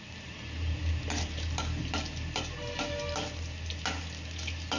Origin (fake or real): real